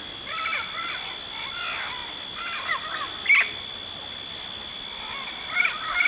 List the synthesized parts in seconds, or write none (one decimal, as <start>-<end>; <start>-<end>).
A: none